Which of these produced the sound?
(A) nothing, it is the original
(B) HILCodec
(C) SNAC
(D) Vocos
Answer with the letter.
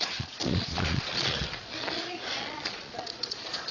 D